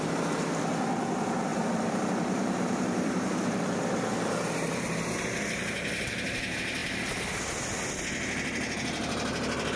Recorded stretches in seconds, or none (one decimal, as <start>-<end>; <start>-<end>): 0.0-1.5; 3.3-9.8